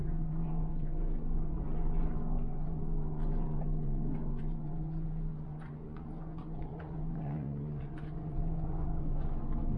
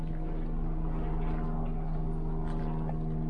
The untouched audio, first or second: second